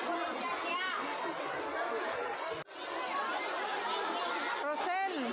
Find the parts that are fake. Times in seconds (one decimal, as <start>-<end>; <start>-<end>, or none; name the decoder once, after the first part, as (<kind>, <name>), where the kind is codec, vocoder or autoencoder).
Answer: none